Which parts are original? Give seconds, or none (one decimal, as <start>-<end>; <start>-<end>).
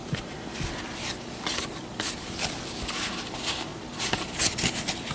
0.0-5.1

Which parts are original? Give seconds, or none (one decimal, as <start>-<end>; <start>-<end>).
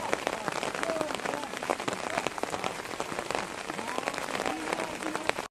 none